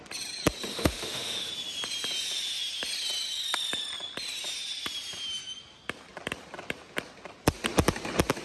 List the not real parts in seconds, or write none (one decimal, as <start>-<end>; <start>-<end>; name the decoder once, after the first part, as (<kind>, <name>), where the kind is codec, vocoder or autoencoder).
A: 0.7-1.5 (autoencoder, DAC-VAE)